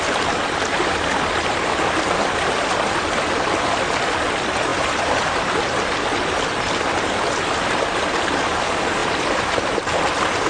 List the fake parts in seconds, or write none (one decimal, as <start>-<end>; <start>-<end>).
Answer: none